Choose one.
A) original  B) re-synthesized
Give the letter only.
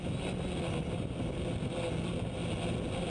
A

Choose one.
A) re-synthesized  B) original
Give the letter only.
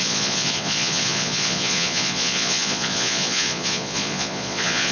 A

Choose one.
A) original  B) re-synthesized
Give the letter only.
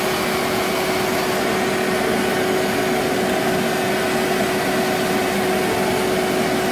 A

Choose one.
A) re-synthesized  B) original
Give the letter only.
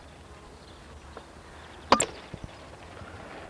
B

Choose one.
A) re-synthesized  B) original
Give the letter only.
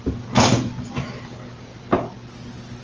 B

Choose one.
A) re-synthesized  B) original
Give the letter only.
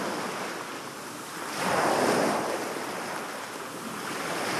B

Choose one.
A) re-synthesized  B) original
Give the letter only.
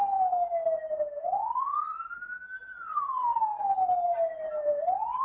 B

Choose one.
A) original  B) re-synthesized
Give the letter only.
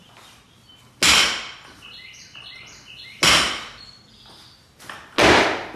A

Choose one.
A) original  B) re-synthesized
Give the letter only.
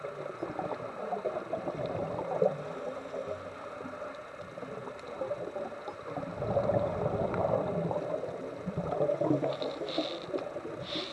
A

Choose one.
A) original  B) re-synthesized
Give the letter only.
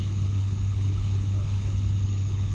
B